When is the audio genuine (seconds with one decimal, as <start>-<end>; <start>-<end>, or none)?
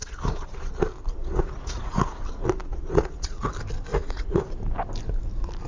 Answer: 0.7-1.2; 2.2-2.6; 3.4-3.9; 4.5-5.7